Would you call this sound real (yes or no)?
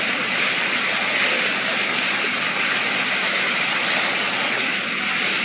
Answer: yes